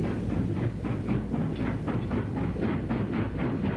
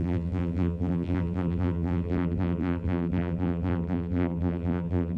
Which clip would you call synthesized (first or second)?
second